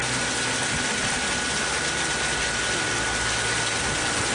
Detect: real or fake real